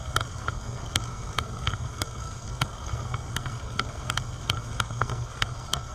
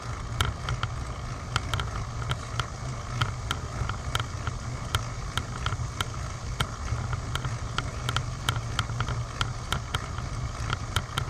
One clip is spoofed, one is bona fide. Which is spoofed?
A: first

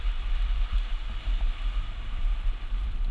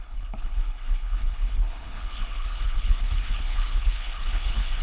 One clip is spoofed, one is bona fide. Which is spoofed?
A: second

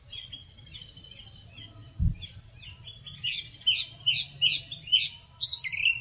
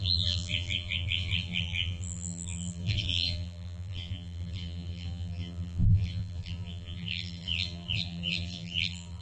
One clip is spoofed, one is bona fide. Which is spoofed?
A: second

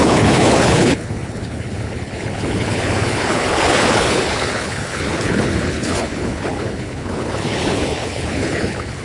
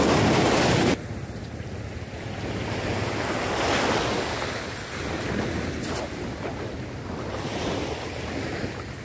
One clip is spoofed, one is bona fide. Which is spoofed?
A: first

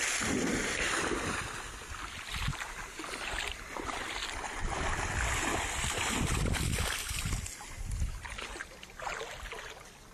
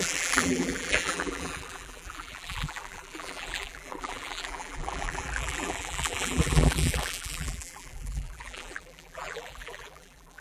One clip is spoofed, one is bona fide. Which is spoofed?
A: second